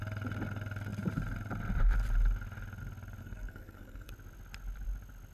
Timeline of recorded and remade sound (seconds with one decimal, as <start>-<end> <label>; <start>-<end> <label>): 0.0-3.2 recorded; 3.2-4.1 remade; 4.1-5.3 recorded